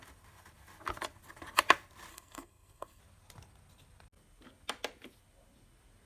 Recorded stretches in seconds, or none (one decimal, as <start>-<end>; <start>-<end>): 0.0-2.1; 3.0-6.1